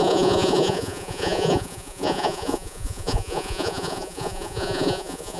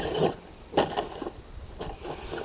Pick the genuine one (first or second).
second